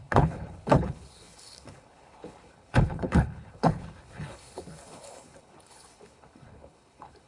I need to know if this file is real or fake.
fake